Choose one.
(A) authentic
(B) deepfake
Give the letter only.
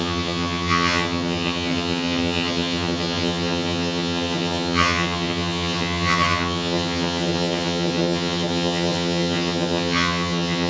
B